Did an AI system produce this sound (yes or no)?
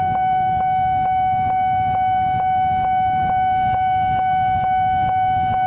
no